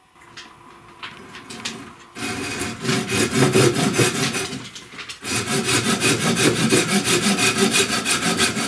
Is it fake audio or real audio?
real